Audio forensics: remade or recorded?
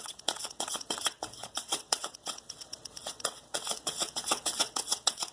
remade